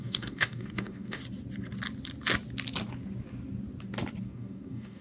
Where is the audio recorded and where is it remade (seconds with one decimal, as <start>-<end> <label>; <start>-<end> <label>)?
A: 0.0-1.2 remade; 1.2-4.2 recorded; 4.2-5.0 remade